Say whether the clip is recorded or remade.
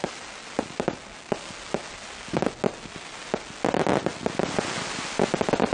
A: recorded